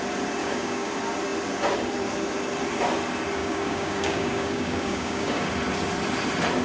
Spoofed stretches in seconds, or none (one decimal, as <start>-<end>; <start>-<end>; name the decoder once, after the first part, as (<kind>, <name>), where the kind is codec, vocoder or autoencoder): 0.4-0.9 (codec, DAC); 3.4-5.5